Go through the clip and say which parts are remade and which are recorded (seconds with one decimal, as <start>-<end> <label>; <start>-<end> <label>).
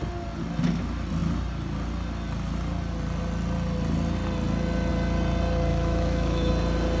0.0-5.7 recorded; 5.7-6.5 remade; 6.5-7.0 recorded